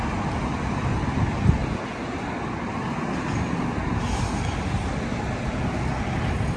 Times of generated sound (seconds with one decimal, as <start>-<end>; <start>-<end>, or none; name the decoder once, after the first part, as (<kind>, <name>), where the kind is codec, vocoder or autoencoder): none